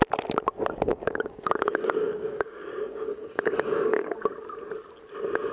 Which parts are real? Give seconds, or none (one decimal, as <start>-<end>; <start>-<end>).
0.0-0.9; 4.2-5.5